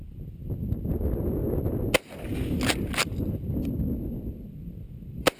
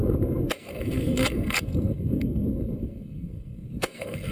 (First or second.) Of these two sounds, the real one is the first